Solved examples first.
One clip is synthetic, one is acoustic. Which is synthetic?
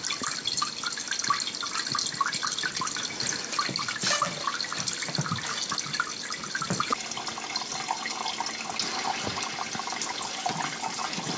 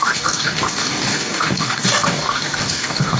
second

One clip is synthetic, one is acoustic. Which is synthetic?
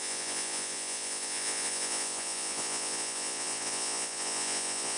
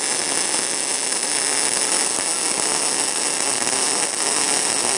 first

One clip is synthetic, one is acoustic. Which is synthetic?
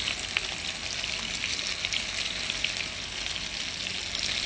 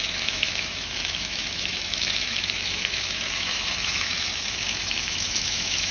second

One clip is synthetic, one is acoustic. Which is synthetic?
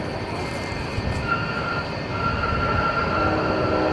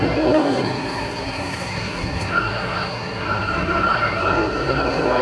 second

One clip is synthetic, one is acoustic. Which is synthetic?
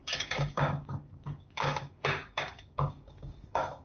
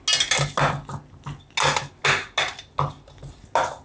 first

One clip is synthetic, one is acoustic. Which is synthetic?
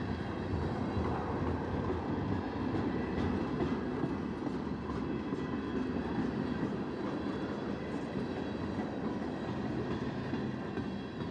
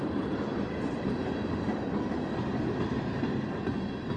second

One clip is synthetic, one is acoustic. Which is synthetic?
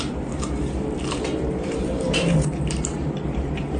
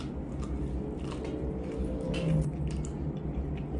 first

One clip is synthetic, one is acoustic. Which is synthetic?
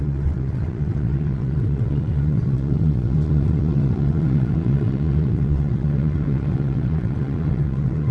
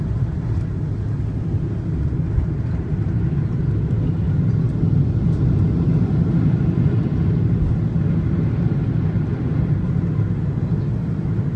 first